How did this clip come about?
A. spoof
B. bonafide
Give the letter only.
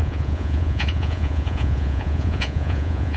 A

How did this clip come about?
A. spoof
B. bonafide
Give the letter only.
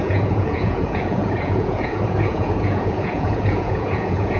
A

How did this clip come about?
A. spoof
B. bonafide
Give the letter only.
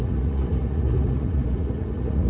A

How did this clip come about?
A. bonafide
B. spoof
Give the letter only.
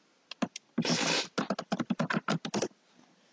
A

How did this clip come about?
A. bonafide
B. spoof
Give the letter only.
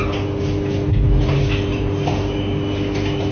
A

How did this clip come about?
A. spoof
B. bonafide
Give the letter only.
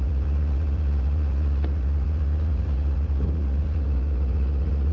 A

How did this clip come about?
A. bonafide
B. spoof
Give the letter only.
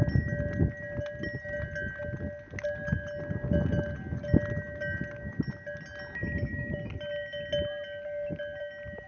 A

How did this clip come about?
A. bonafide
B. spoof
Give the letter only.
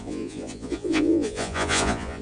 B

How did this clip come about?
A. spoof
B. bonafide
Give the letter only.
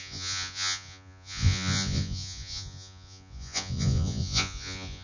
A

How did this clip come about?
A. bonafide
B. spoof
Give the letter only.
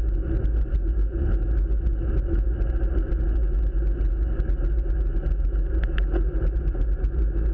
A